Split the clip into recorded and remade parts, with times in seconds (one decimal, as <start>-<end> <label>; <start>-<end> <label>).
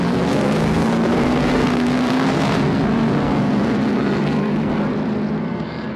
0.0-4.8 remade; 4.8-5.4 recorded; 5.4-6.0 remade